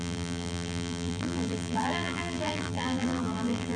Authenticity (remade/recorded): remade